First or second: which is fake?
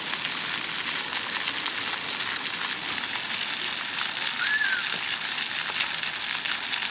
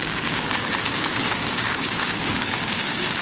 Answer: second